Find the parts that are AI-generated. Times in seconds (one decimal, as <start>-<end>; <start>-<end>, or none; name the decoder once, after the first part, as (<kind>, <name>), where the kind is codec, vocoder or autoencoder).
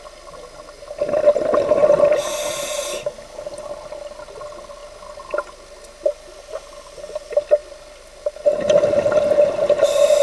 none